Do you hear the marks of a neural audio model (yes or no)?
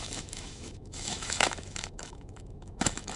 yes